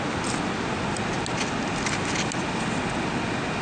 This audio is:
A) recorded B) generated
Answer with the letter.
A